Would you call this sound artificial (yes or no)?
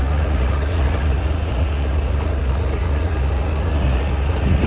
yes